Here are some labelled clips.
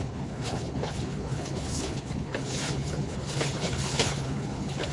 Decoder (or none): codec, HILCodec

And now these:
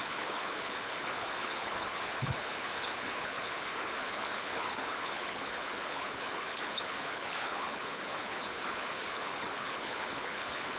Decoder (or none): codec, HILCodec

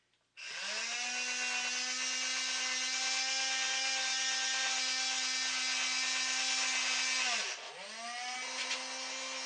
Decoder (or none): none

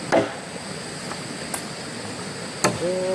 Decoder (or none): none